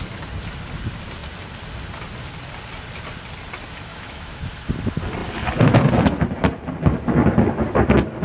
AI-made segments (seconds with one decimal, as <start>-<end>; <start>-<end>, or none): 3.9-4.4